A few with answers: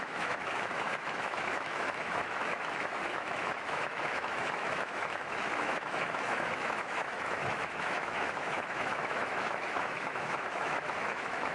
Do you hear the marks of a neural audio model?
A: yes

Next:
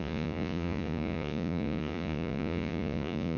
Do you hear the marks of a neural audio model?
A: yes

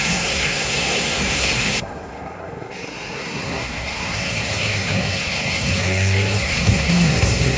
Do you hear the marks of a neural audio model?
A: yes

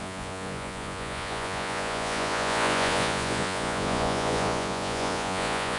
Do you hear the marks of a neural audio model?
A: yes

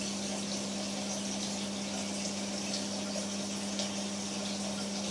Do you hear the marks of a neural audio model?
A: no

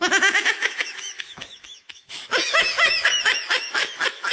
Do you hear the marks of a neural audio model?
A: yes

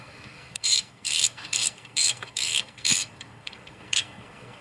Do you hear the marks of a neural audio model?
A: yes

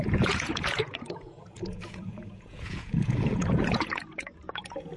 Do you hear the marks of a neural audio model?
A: yes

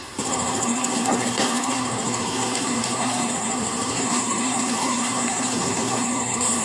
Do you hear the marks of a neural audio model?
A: yes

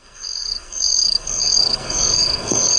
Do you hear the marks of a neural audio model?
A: yes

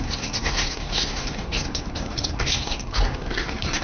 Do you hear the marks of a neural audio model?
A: yes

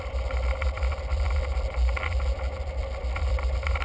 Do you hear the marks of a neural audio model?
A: no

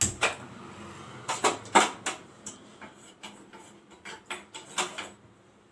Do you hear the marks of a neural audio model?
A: no